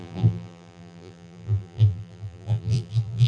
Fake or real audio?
fake